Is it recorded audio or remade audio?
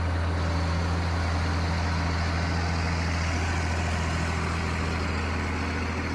recorded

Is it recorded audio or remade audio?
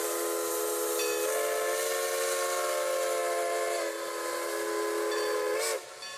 recorded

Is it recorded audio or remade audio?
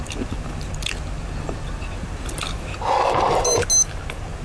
recorded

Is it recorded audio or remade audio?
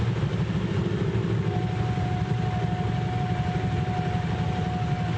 recorded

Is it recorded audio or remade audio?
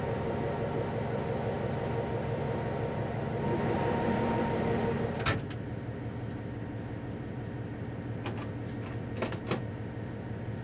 recorded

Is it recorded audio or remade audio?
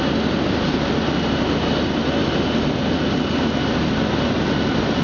recorded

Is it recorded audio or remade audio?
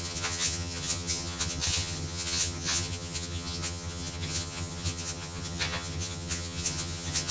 remade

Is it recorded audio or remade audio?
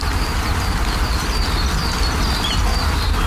recorded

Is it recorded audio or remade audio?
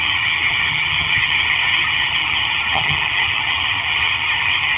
remade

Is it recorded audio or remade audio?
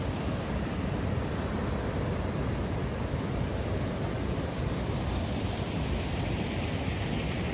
recorded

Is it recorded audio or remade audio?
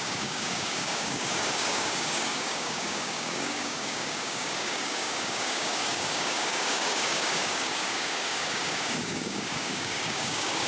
remade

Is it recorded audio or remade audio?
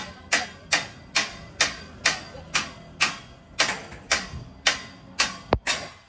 recorded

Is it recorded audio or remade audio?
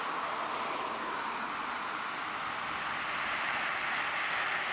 recorded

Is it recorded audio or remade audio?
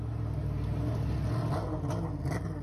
recorded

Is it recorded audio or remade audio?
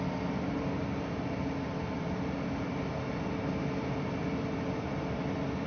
recorded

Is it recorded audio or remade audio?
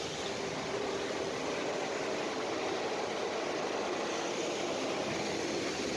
recorded